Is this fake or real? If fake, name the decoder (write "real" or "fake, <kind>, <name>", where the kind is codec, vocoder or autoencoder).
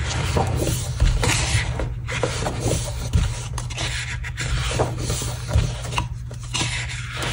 real